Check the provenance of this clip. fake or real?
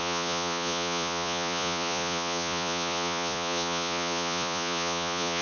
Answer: fake